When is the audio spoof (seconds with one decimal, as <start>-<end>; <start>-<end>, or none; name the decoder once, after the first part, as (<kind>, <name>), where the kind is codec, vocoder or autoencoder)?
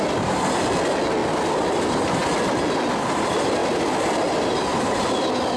none